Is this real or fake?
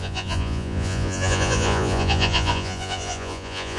fake